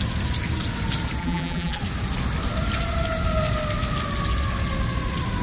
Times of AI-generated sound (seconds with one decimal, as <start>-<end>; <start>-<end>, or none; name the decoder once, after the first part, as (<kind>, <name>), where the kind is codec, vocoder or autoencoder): 1.2-1.8 (vocoder, BigVGAN v2)